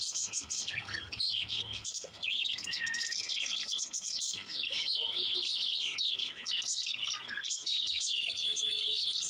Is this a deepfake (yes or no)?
yes